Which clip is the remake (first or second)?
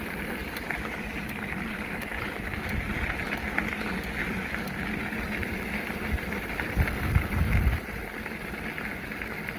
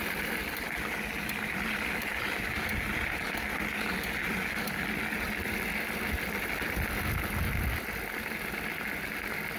first